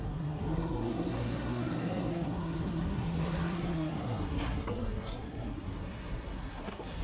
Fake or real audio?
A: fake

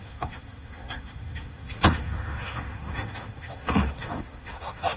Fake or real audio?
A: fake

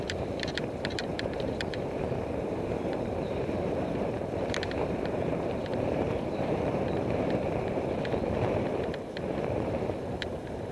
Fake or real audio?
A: fake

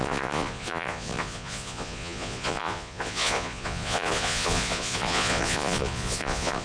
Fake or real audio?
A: fake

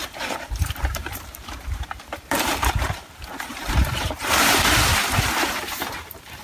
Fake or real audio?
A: fake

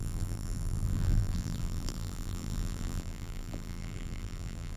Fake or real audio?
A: fake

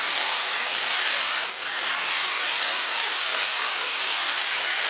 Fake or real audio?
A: fake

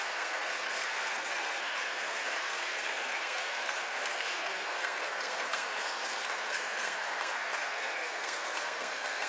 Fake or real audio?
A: fake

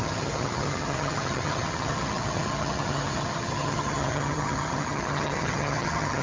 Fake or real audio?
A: fake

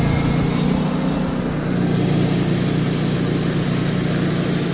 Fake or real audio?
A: real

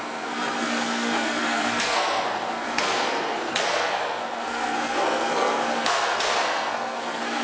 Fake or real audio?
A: fake